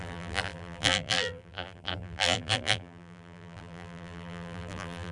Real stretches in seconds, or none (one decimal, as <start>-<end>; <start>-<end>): none